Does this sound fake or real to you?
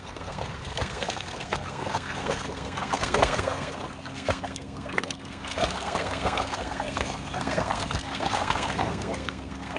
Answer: fake